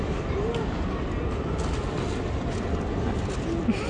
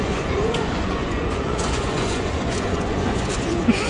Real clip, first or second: first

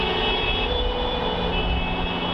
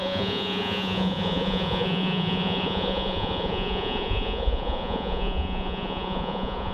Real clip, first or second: first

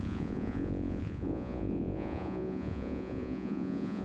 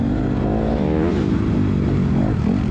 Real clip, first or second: second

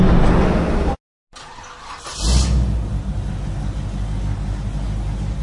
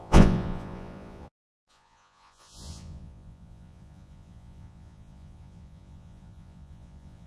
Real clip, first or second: first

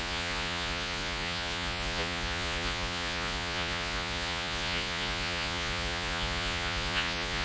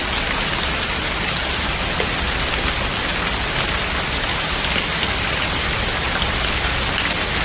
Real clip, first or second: second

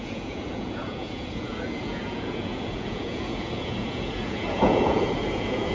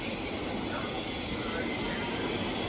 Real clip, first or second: second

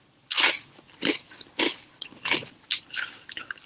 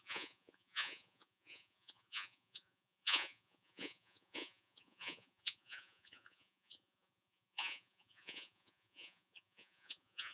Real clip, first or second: first